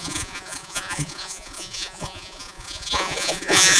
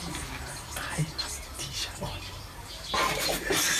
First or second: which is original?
second